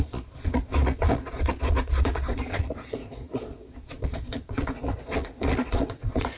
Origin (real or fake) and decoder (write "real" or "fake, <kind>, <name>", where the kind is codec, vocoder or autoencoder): fake, vocoder, Vocos